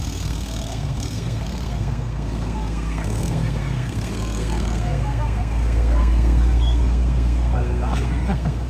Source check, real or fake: fake